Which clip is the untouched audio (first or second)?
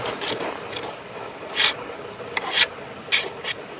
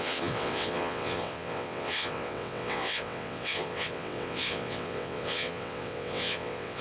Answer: first